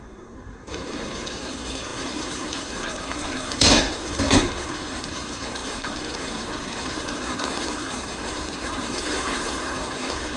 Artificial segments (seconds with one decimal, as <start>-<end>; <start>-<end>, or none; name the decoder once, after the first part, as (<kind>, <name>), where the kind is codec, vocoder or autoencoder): 0.0-10.4 (codec, SNAC)